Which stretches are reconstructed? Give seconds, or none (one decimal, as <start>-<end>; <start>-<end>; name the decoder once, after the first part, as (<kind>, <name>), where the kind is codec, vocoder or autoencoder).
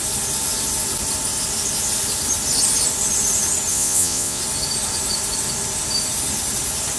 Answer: 3.7-4.4 (vocoder, Vocos)